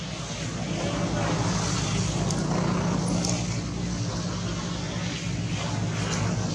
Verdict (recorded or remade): recorded